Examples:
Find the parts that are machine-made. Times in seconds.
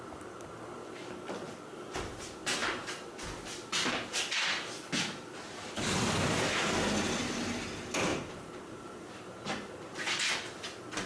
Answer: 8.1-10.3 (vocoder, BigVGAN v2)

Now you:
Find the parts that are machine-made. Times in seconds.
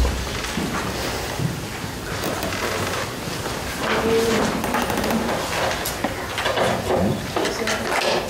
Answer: none